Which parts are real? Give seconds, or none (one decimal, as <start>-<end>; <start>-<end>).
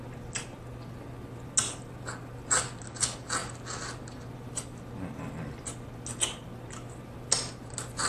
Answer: 0.0-8.1